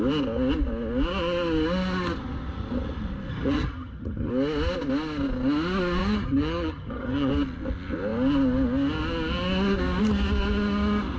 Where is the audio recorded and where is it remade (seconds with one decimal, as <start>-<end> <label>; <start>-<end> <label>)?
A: 0.0-3.3 recorded; 3.3-4.3 remade; 4.3-6.0 recorded; 6.0-7.3 remade; 7.3-11.2 recorded